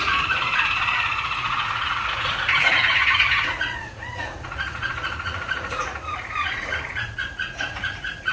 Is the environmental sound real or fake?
fake